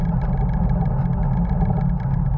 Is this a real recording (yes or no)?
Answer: yes